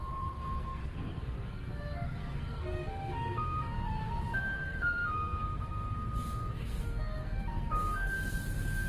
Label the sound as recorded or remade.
remade